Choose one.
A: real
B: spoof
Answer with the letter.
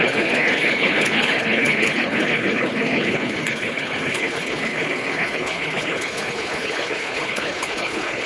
B